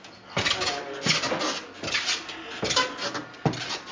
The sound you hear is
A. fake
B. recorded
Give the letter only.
B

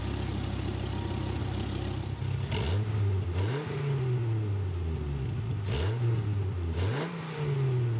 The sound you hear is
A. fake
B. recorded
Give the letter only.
B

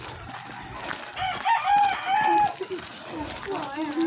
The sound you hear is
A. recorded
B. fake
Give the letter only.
A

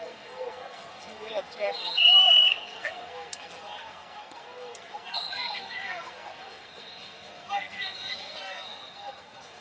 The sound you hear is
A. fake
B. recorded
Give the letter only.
A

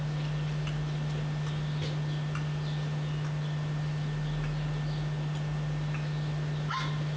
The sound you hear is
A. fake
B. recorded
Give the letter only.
B